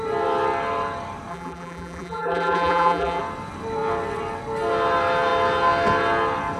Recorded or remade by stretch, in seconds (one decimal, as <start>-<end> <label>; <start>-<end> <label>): 0.0-1.3 recorded; 1.3-3.2 remade; 3.2-6.6 recorded